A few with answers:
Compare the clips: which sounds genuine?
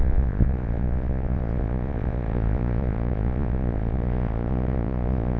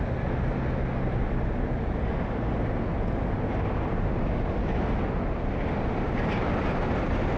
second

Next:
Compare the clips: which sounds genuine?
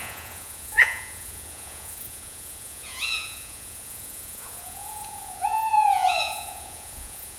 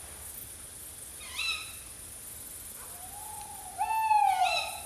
second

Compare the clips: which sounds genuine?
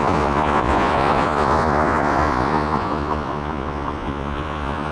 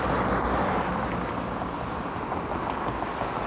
second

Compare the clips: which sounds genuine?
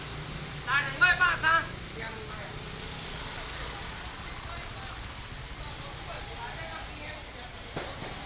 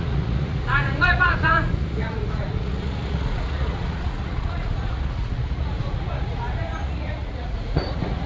first